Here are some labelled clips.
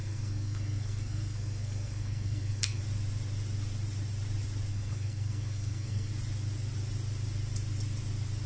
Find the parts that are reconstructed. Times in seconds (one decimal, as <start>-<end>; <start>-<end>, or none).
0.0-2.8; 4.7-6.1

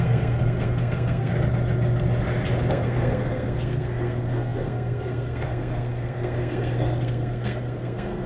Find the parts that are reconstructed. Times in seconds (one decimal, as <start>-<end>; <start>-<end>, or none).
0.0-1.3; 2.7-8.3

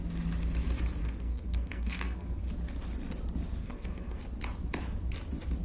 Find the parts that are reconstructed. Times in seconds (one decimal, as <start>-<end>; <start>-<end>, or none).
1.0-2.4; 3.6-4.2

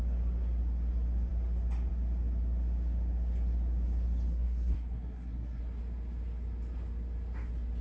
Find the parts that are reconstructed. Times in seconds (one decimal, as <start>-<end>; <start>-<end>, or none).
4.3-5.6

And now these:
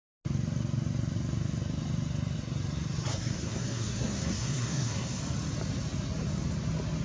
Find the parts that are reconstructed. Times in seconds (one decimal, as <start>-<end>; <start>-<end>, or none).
3.1-5.2

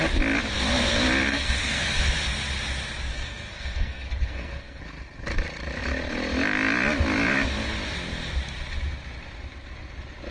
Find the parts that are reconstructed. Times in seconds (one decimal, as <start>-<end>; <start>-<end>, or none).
1.3-2.0; 3.1-4.8

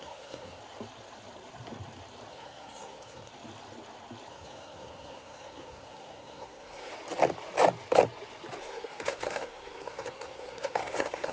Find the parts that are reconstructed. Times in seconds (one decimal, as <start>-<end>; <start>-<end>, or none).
0.0-0.6; 2.3-3.3; 4.3-6.9; 8.6-11.3